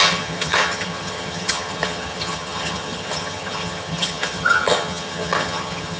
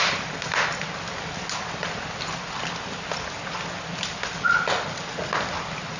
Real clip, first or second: second